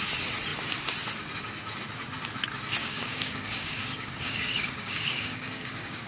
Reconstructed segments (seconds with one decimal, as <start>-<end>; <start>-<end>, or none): 2.8-6.1